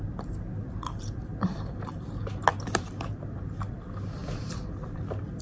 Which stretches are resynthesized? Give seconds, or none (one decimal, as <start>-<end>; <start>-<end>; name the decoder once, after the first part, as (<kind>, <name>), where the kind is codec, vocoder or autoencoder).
0.8-2.2 (vocoder, BigVGAN v2); 4.2-5.4